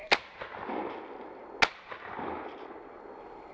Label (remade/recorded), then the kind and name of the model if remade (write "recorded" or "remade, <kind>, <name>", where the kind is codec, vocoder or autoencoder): recorded